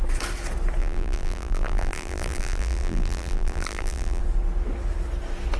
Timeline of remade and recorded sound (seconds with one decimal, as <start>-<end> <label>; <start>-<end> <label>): 0.0-0.8 recorded; 0.8-4.2 remade; 4.2-5.6 recorded